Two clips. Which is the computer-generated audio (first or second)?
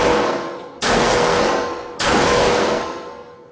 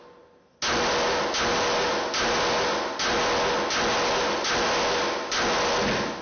first